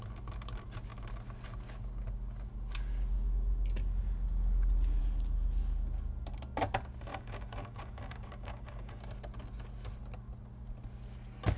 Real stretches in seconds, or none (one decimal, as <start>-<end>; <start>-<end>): 0.0-7.1; 9.0-11.6